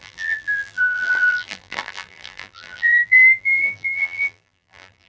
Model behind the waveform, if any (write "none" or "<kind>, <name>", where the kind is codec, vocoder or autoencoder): vocoder, BigVGAN v2